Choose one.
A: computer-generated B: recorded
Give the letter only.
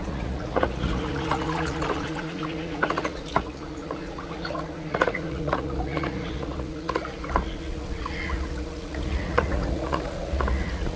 A